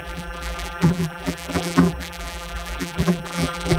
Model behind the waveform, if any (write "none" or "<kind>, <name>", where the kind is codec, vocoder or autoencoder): vocoder, BigVGAN v2